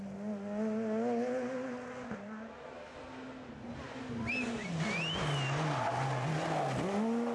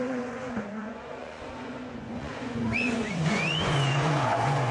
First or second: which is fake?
second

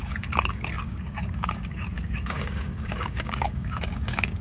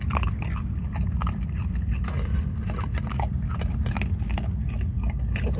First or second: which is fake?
first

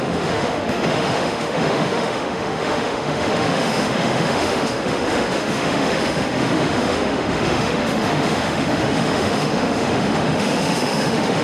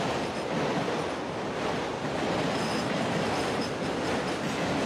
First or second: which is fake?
first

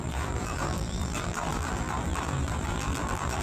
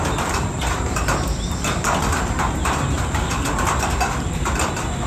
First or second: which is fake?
first